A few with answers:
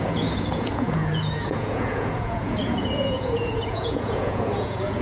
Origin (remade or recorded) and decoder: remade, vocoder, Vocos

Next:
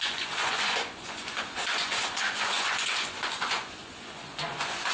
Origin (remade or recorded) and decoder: remade, vocoder, Vocos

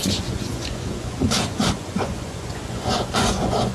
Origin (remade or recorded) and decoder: remade, vocoder, Vocos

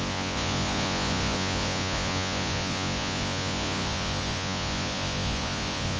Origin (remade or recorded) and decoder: remade, vocoder, Vocos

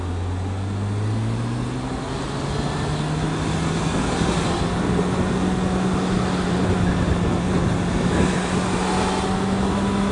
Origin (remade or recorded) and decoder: recorded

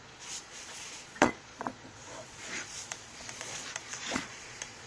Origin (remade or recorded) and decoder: remade, vocoder, Vocos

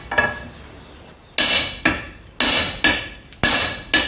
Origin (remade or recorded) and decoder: recorded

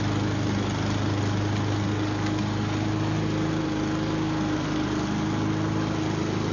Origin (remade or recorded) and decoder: recorded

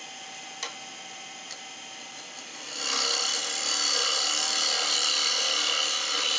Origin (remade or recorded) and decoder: recorded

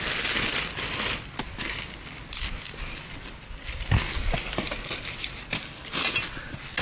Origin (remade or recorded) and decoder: recorded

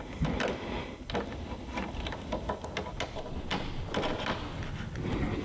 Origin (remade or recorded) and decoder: recorded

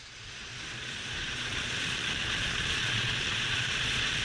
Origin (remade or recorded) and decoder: remade, vocoder, Vocos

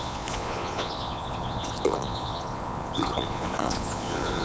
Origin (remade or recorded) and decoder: remade, vocoder, Vocos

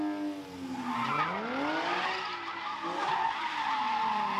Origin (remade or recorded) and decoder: recorded